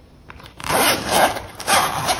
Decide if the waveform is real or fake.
fake